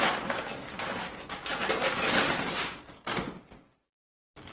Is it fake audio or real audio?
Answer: real